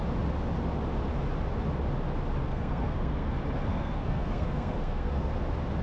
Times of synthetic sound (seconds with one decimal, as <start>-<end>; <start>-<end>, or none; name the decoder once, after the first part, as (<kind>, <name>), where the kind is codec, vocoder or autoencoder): 2.4-3.3 (codec, SNAC); 3.7-5.3